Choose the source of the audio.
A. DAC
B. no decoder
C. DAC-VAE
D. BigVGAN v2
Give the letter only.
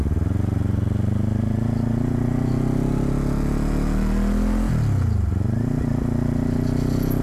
B